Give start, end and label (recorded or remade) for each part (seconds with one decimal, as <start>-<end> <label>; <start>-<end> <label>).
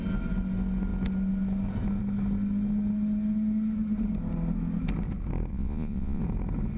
0.0-5.5 recorded; 5.5-6.2 remade; 6.2-6.8 recorded